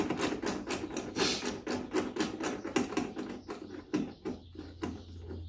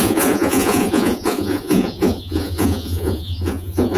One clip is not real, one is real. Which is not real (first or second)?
second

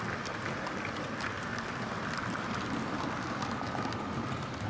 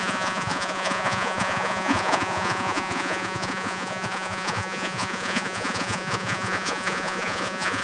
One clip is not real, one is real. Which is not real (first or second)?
second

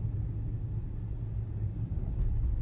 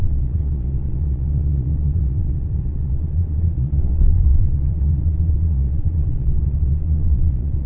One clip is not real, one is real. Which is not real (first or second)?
second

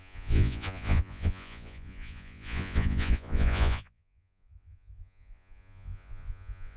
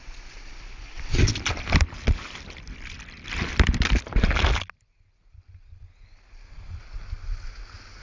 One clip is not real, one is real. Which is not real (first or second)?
first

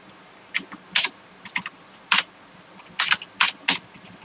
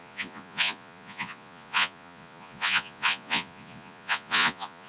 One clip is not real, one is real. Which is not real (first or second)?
second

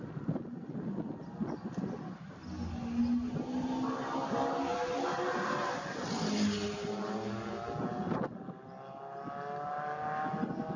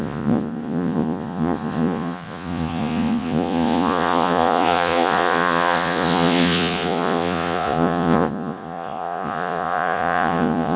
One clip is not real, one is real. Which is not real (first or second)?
second